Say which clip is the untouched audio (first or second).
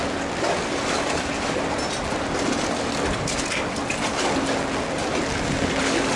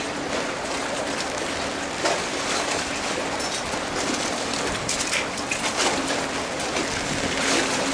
first